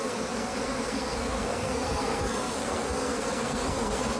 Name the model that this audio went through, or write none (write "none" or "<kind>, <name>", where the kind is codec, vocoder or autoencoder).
codec, SNAC